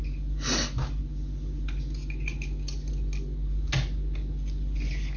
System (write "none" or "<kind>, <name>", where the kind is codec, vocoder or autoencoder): none